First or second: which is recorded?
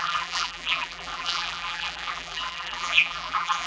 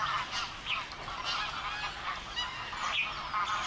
second